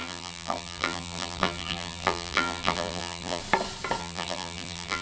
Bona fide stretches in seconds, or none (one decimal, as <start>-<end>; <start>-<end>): 3.4-4.0